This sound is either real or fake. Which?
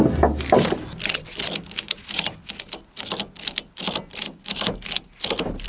real